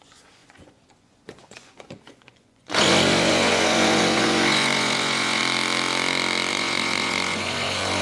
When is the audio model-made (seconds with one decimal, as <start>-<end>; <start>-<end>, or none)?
0.0-5.4; 6.5-8.0